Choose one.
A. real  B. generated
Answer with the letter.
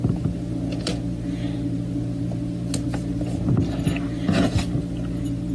A